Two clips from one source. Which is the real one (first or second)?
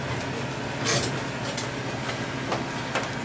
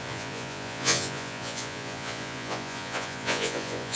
first